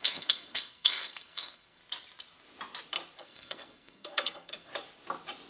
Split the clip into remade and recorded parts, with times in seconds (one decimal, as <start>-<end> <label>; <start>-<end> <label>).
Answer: 0.0-1.8 remade; 1.8-3.2 recorded; 3.2-4.7 remade; 4.7-5.5 recorded